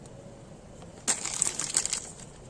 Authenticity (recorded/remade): recorded